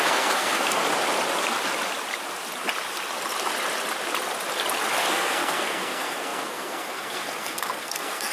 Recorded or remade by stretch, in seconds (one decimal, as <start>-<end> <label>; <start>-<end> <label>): 0.0-0.8 remade; 0.8-5.0 recorded; 5.0-8.3 remade